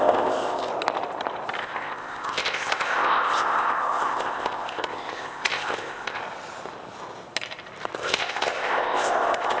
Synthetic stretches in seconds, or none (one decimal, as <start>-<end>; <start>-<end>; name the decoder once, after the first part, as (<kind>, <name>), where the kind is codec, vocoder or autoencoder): 0.0-0.7 (codec, ZipCodec); 1.6-6.2; 8.0-9.6